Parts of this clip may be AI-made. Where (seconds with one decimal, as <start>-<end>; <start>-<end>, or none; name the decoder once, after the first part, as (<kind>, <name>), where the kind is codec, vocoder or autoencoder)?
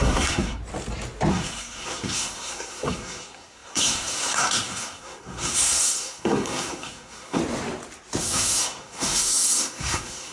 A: 0.0-0.6 (codec, SNAC); 1.3-7.4; 8.2-10.3